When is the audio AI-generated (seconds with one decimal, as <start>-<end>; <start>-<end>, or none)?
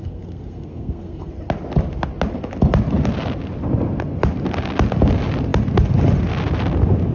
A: 0.0-1.3